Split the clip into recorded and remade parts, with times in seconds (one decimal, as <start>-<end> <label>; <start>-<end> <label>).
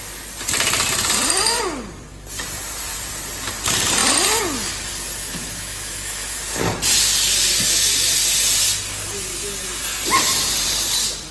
0.0-5.2 recorded; 5.2-6.4 remade; 6.4-11.3 recorded